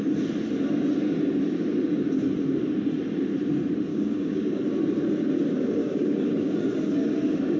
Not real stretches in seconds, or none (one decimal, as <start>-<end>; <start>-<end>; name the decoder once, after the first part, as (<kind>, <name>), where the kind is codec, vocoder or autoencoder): 3.9-4.6 (codec, DAC); 5.8-6.5